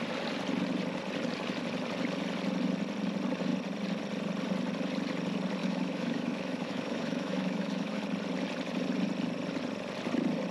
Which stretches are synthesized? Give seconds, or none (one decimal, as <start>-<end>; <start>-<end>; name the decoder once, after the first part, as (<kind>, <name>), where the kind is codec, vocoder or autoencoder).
5.6-8.0 (autoencoder, DAC-VAE)